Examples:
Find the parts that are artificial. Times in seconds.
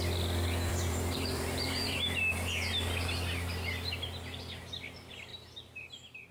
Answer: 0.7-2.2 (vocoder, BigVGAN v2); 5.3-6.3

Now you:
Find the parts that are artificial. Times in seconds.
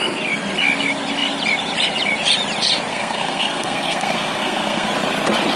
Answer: 2.9-4.9 (codec, SNAC)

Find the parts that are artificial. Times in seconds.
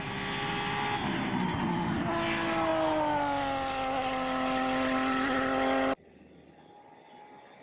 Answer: none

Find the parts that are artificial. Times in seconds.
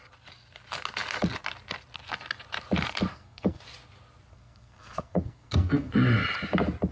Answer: 3.1-3.6 (codec, SNAC); 4.3-5.9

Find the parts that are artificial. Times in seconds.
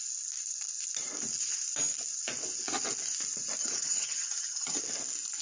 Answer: 3.6-4.8 (vocoder, HiFi-GAN)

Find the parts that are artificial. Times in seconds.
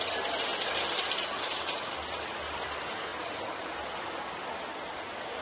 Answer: none